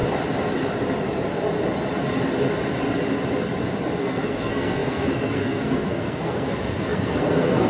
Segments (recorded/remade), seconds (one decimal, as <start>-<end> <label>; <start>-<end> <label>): 0.0-4.0 recorded; 4.0-7.7 remade